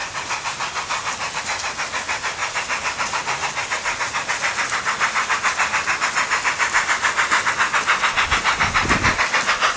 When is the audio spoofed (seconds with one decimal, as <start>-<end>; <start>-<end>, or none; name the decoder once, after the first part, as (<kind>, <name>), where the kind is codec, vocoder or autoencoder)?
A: 0.0-1.4 (vocoder, BigVGAN v2); 2.4-7.5; 8.8-9.8